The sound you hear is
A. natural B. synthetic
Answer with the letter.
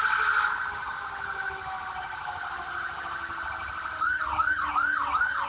A